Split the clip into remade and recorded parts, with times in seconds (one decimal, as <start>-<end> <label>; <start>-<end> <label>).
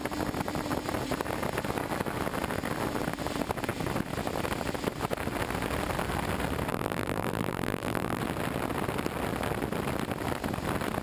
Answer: 0.0-6.7 recorded; 6.7-8.2 remade; 8.2-11.0 recorded